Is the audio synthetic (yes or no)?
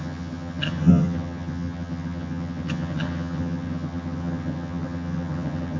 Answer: yes